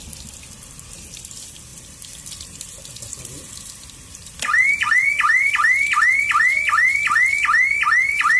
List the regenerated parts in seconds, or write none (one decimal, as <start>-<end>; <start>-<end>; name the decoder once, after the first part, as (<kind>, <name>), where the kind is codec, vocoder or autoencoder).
1.7-5.5 (vocoder, BigVGAN v2)